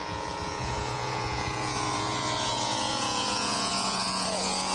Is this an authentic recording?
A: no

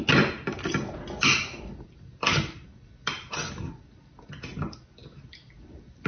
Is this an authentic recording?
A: yes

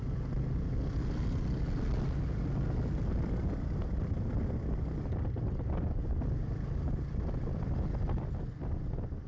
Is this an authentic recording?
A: yes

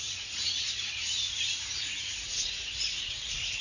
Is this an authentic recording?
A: no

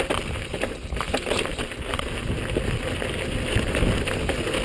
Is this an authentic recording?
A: yes